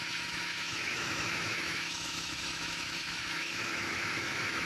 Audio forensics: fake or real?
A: fake